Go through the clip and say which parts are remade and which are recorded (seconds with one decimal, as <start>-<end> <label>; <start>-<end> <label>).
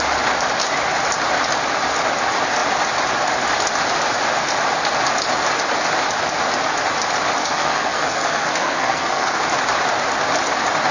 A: 0.0-7.4 recorded; 7.4-9.4 remade; 9.4-10.9 recorded